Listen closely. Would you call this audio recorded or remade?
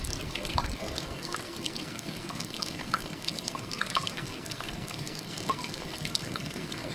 remade